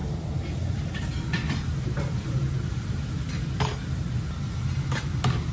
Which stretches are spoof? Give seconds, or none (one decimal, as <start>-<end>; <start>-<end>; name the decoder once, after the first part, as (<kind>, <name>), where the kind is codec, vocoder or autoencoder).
none